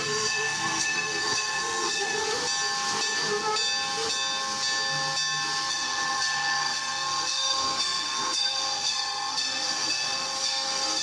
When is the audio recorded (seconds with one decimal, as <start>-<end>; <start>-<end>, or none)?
2.2-5.7